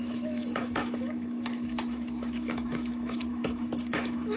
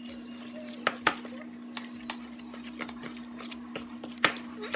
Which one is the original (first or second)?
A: second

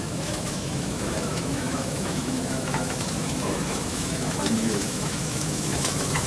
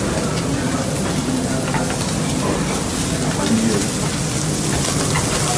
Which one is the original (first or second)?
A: second